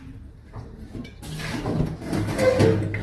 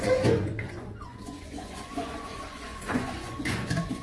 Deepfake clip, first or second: second